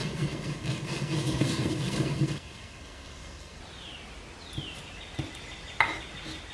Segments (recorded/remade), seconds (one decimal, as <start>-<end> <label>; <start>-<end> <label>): 0.0-3.6 remade; 3.6-6.5 recorded